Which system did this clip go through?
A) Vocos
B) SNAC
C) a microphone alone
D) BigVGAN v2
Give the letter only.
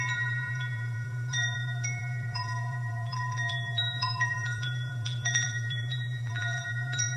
D